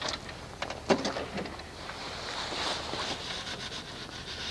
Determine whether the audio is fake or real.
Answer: real